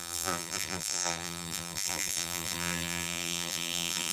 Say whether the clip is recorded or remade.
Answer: remade